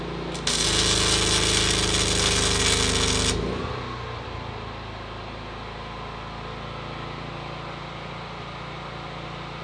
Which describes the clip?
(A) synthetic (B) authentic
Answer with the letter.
B